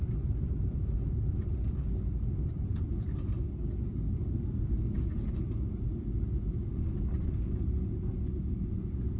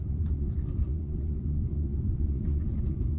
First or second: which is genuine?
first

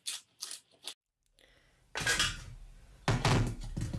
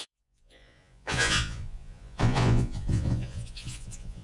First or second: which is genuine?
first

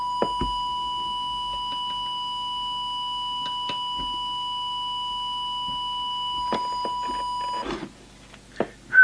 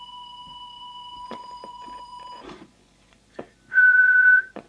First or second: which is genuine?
first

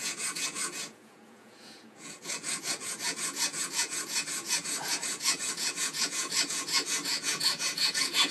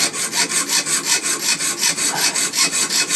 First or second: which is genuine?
second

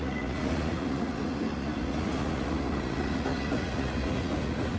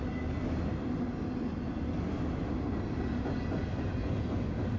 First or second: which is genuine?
second